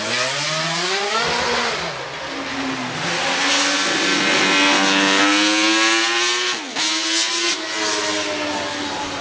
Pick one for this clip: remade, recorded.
recorded